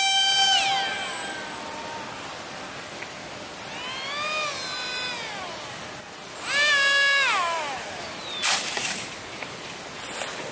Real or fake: real